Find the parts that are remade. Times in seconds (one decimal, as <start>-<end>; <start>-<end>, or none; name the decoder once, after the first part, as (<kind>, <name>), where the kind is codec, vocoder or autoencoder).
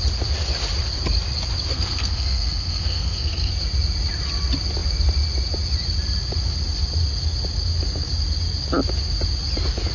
1.7-3.5 (codec, SNAC)